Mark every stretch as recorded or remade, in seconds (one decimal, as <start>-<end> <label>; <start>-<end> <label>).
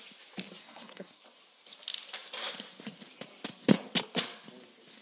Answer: 0.0-0.6 recorded; 0.6-1.2 remade; 1.2-5.0 recorded